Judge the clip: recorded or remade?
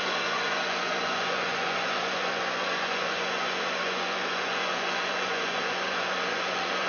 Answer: remade